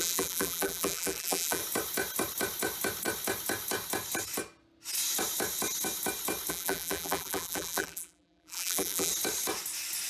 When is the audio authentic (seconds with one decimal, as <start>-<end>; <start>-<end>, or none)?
1.6-6.5; 9.1-10.1